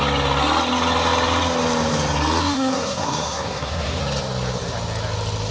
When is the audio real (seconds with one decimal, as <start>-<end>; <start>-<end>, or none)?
0.0-2.4; 4.0-5.5